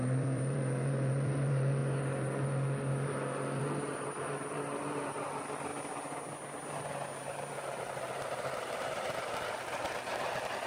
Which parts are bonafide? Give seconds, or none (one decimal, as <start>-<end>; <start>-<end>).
1.8-3.6; 5.7-7.5